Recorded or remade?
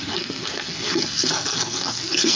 remade